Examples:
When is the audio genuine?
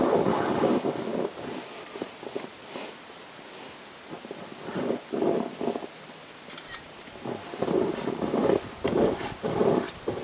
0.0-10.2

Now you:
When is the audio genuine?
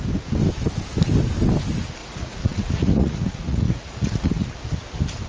0.0-2.0; 4.5-5.3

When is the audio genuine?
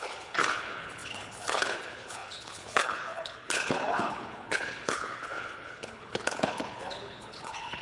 none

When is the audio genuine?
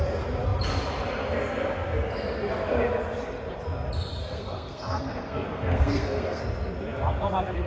0.0-4.2; 6.4-7.7